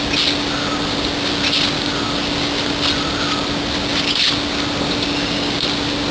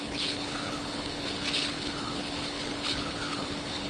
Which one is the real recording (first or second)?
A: first